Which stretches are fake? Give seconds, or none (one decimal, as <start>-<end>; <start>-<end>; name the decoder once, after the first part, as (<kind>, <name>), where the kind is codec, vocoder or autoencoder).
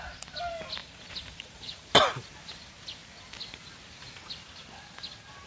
0.8-1.9 (vocoder, Vocos)